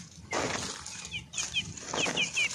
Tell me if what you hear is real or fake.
real